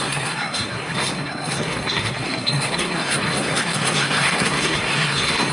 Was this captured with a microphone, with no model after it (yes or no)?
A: no